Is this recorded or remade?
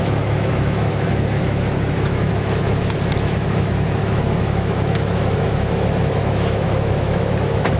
remade